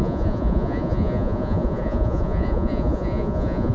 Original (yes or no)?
no